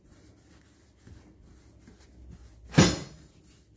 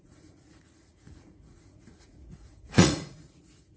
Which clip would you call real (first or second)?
first